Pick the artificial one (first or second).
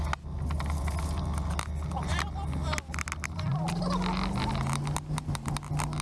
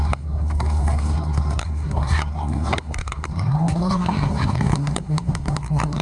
second